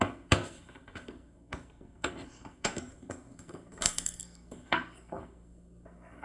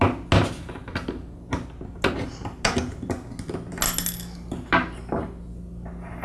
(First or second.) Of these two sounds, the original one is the second